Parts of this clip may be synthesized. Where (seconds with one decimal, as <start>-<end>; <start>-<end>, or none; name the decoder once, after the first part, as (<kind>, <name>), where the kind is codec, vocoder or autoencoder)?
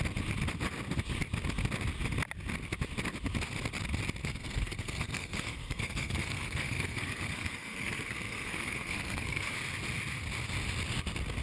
4.2-9.5 (codec, SNAC)